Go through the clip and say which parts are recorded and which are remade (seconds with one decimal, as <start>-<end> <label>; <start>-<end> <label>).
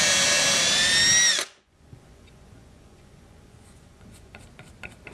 0.0-1.3 recorded; 1.3-4.4 remade; 4.4-5.1 recorded